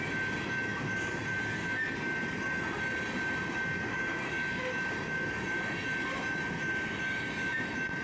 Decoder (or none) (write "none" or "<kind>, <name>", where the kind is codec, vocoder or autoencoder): none